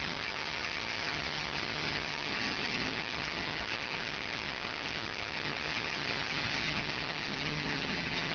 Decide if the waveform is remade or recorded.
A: remade